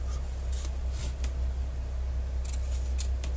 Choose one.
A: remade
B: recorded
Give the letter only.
B